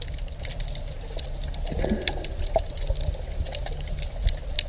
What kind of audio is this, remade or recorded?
recorded